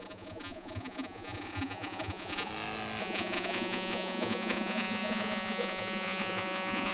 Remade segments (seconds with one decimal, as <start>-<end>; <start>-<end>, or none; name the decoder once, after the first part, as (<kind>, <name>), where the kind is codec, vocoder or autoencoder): 0.0-2.5 (vocoder, Vocos); 3.0-6.9